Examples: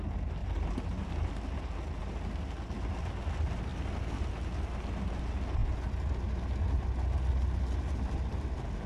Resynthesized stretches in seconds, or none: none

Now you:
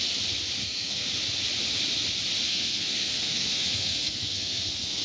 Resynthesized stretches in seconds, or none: 0.6-1.1; 2.5-5.0

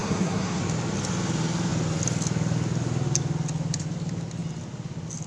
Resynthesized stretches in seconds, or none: 0.0-0.6

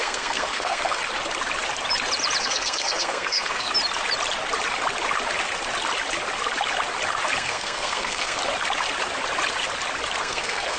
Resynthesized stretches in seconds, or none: 0.0-1.0; 2.4-3.7; 7.4-8.4; 10.2-10.8

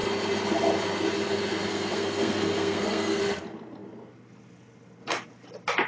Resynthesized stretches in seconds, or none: 1.7-3.2

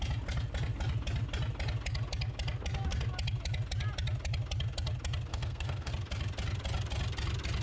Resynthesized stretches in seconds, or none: 5.3-5.9

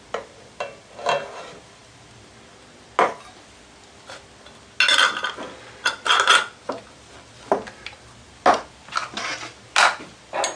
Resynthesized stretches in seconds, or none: none

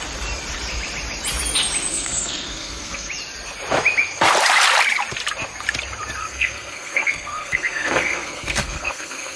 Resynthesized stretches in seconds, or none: 1.9-3.1; 6.2-9.4